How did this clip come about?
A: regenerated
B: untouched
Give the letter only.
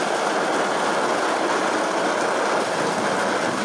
B